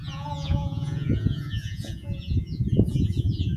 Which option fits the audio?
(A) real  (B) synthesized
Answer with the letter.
B